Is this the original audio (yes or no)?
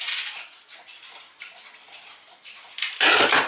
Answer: yes